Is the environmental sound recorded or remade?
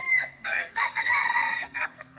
remade